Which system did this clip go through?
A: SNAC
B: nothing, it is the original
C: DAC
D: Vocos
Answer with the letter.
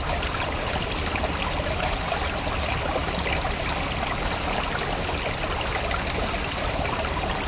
B